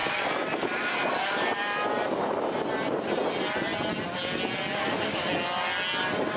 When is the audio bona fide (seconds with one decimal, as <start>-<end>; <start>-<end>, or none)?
0.0-6.4